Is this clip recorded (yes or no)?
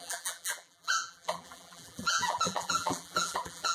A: no